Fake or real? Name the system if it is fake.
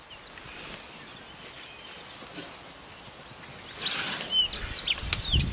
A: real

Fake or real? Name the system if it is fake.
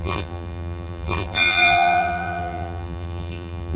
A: fake, vocoder, BigVGAN v2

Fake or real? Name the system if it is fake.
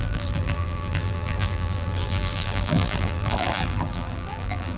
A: fake, vocoder, BigVGAN v2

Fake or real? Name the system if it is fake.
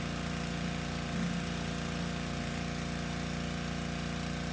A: real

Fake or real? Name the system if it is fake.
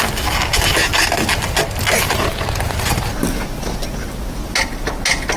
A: real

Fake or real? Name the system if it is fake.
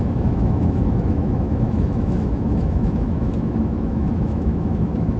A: fake, autoencoder, DAC-VAE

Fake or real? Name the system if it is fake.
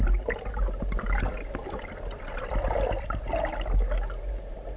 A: real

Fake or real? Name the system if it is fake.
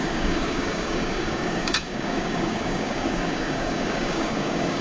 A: fake, codec, DAC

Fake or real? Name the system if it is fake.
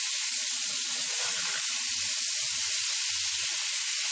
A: real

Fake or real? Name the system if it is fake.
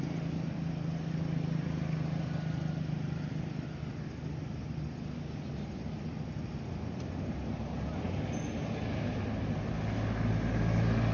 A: real